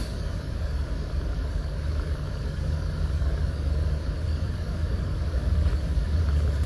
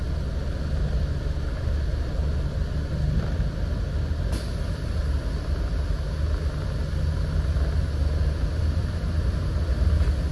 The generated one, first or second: first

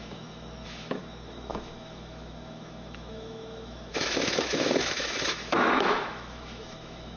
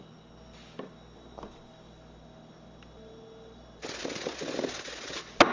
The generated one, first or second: first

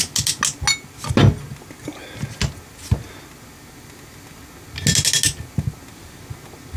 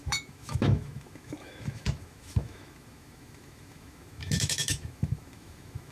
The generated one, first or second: second